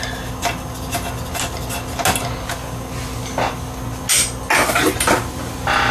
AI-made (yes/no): no